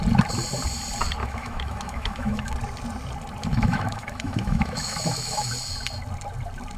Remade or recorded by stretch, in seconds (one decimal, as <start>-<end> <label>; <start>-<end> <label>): 0.0-1.2 recorded; 1.2-2.5 remade; 2.5-3.4 recorded; 3.4-5.5 remade; 5.5-6.8 recorded